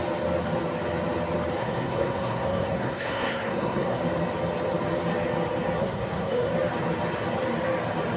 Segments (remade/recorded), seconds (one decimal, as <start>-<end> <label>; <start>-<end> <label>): 0.0-1.6 recorded; 1.6-4.0 remade; 4.0-5.8 recorded; 5.8-6.5 remade; 6.5-8.2 recorded